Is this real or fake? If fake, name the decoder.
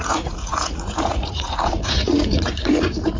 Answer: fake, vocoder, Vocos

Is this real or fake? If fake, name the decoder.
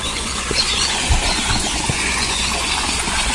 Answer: fake, vocoder, Vocos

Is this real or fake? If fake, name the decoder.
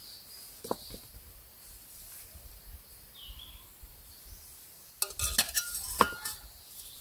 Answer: real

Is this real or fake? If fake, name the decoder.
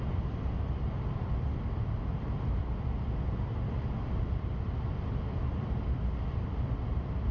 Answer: real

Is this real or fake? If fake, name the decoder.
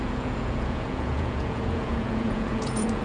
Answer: fake, vocoder, Vocos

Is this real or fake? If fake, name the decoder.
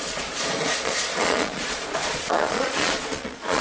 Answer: fake, vocoder, Vocos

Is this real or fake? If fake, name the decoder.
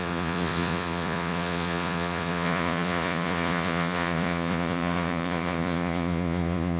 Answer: fake, vocoder, Vocos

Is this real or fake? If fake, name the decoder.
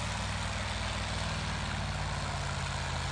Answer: real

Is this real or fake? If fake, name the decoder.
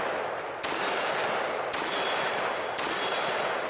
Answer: real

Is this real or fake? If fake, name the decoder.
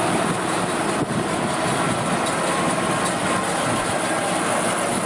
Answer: real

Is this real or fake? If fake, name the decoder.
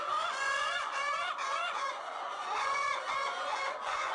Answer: fake, vocoder, Vocos